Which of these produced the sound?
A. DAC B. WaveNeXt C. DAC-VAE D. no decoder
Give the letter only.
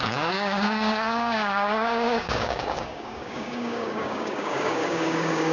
A